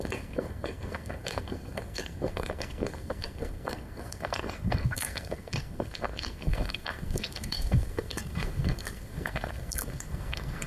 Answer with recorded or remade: remade